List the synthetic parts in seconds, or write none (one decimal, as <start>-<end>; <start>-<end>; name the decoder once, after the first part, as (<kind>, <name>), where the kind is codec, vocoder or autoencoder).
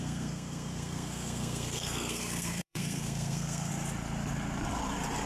0.0-3.7 (codec, SNAC)